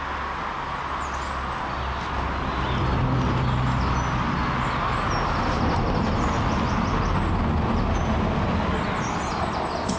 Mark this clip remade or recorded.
recorded